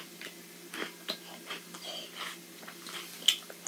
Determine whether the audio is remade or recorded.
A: recorded